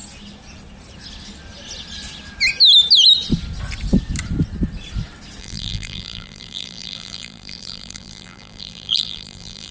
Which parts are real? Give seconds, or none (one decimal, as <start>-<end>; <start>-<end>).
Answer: 0.0-5.4